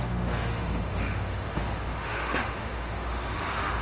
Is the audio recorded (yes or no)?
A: no